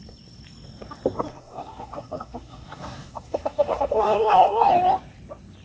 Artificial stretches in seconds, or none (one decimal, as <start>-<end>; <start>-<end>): 1.3-4.7